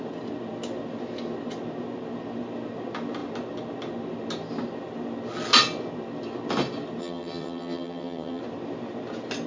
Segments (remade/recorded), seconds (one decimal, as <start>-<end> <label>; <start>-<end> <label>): 0.0-7.0 recorded; 7.0-8.4 remade; 8.4-9.5 recorded